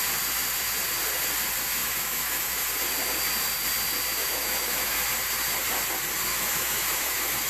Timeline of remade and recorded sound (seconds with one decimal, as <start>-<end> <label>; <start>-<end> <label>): 0.0-1.8 recorded; 1.8-2.7 remade; 2.7-4.2 recorded; 4.2-4.9 remade; 4.9-6.3 recorded; 6.3-7.5 remade